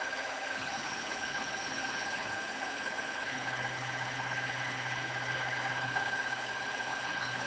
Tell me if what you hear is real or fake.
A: fake